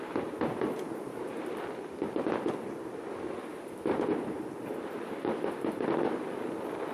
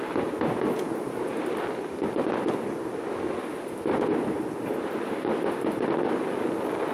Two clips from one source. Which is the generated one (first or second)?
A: first